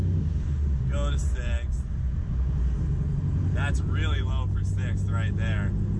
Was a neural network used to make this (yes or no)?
no